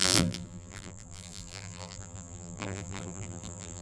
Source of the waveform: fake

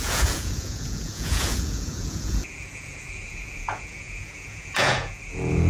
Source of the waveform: fake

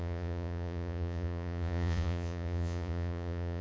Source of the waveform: fake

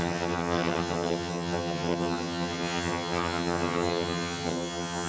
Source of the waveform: fake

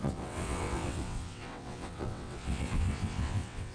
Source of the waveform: fake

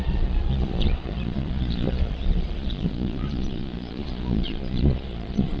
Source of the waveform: fake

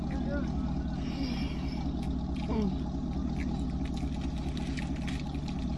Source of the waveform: real